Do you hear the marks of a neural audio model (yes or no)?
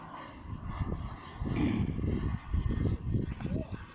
no